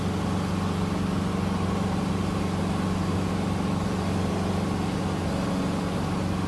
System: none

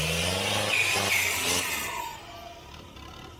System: none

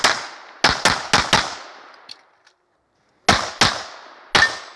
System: none